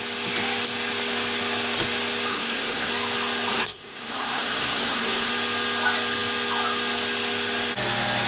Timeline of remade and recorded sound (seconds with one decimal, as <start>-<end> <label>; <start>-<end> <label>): 0.0-2.3 recorded; 2.3-2.9 remade; 2.9-3.5 recorded; 3.5-5.3 remade; 5.3-8.3 recorded

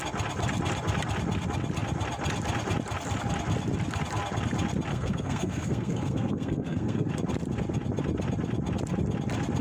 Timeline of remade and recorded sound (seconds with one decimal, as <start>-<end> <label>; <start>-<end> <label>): 0.0-4.9 recorded; 4.9-7.1 remade; 7.1-9.6 recorded

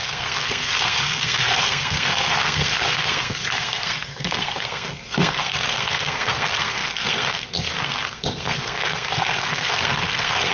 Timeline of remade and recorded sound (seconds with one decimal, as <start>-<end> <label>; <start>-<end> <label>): 0.0-10.5 remade

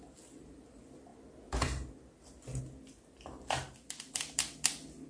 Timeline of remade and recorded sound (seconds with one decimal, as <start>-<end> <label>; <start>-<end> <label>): 0.0-5.1 recorded

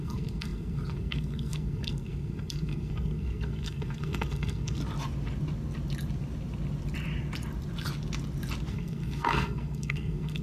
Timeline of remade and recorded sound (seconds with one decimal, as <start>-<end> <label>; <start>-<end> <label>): 0.0-4.8 remade; 4.8-8.7 recorded; 8.7-10.4 remade